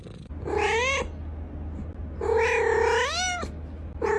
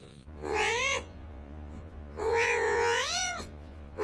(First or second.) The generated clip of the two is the second